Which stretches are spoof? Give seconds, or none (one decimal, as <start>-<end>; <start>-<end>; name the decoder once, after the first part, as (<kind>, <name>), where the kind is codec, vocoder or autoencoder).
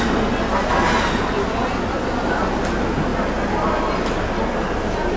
none